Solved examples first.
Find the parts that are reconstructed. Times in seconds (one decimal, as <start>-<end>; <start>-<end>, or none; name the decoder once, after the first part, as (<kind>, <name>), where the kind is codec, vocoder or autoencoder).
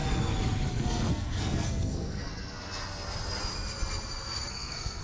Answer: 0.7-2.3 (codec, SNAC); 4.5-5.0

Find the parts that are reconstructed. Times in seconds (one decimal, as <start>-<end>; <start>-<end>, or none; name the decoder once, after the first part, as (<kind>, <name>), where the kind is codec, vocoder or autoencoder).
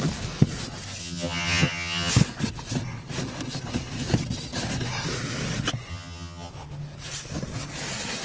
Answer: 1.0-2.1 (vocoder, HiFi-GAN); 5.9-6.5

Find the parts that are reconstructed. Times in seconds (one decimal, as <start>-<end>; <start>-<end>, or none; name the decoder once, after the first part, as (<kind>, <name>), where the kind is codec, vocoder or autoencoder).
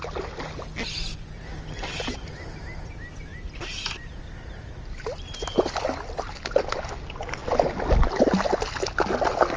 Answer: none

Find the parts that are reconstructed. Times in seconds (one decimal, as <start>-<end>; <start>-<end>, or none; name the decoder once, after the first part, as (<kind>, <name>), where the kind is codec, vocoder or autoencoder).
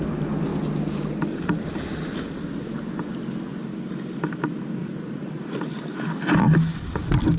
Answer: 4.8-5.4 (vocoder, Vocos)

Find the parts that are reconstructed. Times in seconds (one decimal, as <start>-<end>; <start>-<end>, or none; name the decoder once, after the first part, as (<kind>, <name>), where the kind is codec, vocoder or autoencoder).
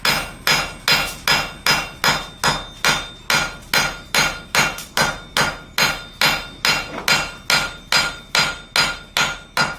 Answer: none